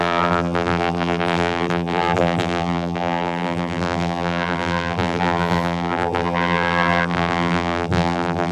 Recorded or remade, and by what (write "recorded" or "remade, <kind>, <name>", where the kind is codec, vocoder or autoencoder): remade, vocoder, BigVGAN v2